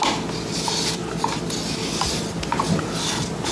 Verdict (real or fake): real